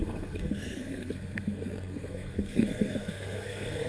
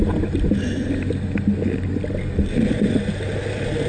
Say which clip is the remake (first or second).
first